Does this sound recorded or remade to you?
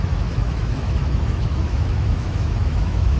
remade